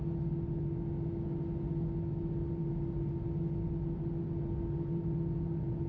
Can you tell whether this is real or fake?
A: real